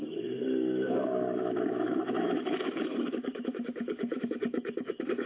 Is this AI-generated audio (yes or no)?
yes